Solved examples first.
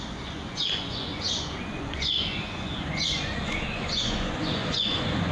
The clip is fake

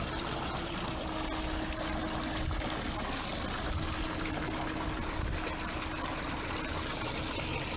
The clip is real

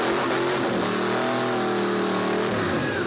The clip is real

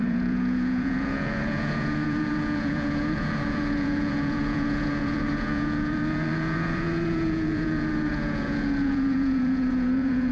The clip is fake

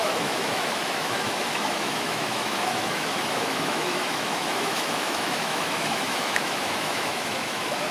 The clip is fake